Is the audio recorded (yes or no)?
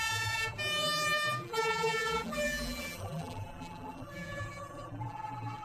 no